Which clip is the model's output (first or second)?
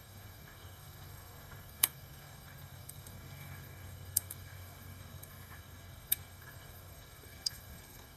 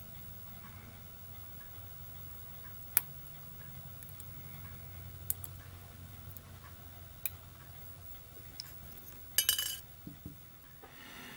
first